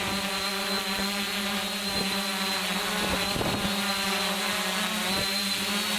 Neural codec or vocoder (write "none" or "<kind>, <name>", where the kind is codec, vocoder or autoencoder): none